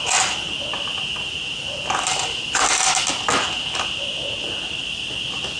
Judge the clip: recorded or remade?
recorded